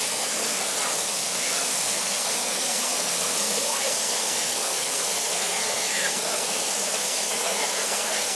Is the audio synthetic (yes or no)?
yes